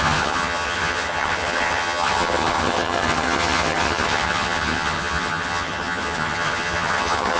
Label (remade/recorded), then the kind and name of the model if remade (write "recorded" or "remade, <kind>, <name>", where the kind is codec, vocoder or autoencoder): remade, vocoder, HiFi-GAN